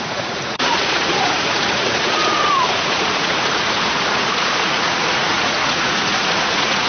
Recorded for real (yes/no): no